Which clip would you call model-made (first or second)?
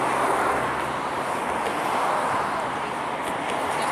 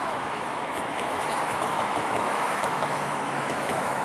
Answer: second